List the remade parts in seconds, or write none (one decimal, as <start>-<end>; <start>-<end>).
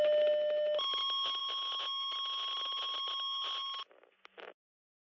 none